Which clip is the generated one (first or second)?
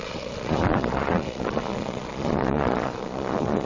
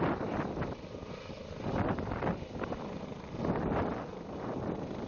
first